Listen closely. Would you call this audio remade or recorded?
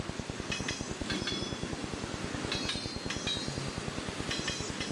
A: recorded